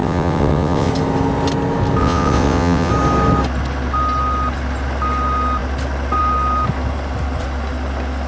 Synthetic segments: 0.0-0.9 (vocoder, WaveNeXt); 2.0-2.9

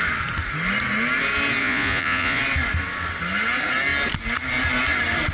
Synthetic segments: 1.6-2.4 (vocoder, Vocos)

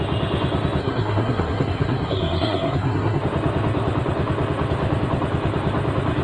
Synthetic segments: 0.8-3.2 (codec, SNAC)

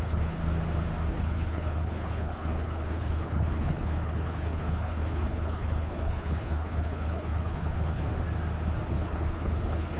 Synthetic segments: 0.0-0.4 (codec, HILCodec); 1.1-8.1; 8.9-10.0